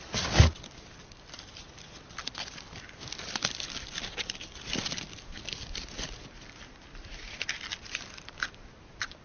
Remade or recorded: recorded